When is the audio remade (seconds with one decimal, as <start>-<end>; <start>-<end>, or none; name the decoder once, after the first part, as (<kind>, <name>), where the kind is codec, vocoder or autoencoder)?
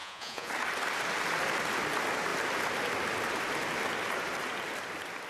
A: 0.0-0.5 (vocoder, Vocos)